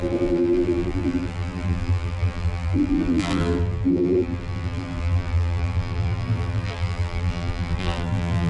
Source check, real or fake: fake